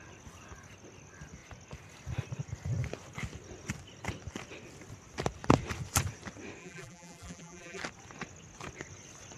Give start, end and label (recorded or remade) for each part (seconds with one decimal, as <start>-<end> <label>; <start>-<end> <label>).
0.0-6.6 recorded; 6.6-7.8 remade; 7.8-9.4 recorded